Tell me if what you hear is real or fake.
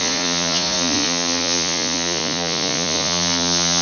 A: fake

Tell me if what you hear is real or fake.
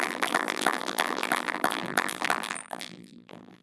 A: fake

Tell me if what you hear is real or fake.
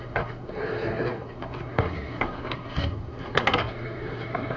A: fake